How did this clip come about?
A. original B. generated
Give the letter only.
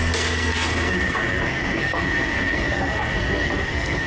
B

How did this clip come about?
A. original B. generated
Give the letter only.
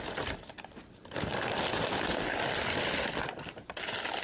A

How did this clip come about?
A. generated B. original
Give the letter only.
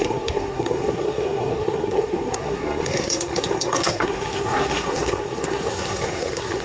A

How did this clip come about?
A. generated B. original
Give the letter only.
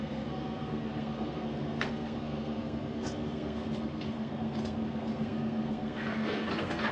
A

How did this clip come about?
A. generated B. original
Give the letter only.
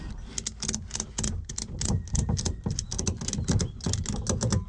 B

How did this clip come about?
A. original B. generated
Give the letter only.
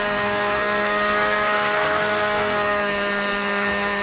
B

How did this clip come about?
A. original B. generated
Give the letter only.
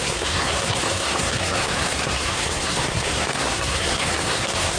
B